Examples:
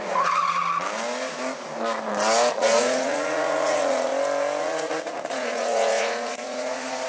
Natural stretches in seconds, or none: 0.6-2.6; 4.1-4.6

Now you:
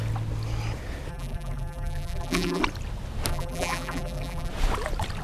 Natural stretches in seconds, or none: 0.0-1.1; 2.6-3.3; 4.5-5.2

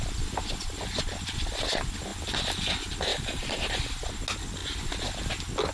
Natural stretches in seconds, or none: 0.0-3.1; 4.1-5.7

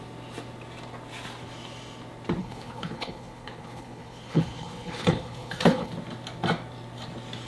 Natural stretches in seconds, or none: 0.0-2.4; 5.9-7.5

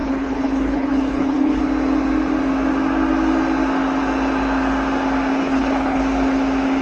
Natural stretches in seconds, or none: 1.6-5.4; 6.0-6.8

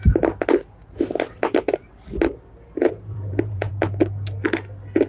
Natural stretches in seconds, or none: 0.0-2.8; 3.7-5.1